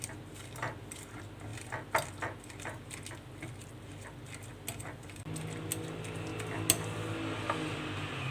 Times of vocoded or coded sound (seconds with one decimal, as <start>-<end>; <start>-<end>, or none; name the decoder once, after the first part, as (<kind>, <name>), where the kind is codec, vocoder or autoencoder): none